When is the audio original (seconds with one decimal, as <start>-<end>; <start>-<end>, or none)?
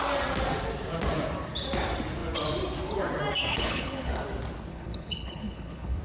0.0-3.5; 4.1-4.7